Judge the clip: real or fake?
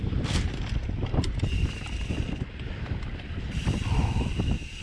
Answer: real